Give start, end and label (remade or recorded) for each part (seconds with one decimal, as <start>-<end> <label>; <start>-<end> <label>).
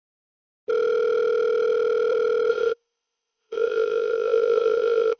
0.0-2.5 recorded; 2.5-5.2 remade